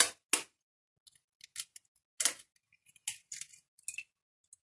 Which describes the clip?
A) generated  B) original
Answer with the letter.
B